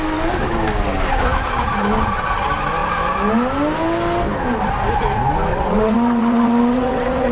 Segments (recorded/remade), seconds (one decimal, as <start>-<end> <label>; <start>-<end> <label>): 0.0-5.5 recorded; 5.5-7.3 remade